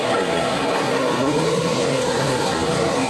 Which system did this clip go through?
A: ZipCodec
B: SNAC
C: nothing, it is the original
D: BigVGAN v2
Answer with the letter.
B